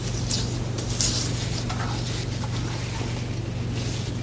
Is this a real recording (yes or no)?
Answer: yes